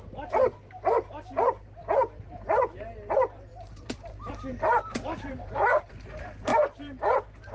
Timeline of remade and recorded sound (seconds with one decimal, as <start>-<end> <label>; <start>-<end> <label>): 0.0-3.5 recorded; 3.5-5.9 remade; 5.9-6.5 recorded; 6.5-7.5 remade